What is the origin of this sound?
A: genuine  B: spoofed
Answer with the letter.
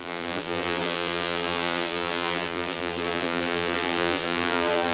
B